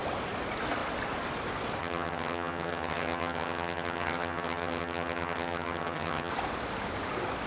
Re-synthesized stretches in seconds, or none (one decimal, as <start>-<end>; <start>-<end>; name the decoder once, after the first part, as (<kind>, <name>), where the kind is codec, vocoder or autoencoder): 1.8-6.3 (vocoder, HiFi-GAN)